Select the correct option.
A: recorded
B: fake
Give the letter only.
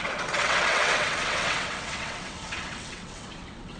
B